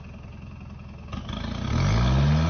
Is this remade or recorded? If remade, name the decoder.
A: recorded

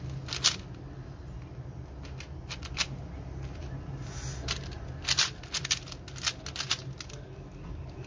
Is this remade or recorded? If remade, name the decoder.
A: recorded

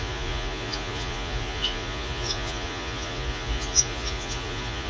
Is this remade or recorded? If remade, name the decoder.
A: remade, vocoder, Vocos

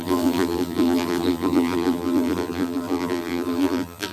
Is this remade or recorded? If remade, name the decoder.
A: remade, vocoder, BigVGAN v2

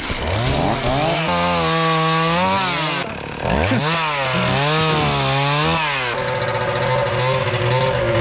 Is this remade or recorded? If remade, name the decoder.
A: recorded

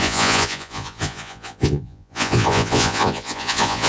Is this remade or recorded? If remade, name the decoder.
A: remade, vocoder, Vocos